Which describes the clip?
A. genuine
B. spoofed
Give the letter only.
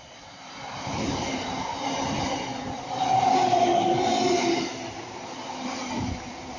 A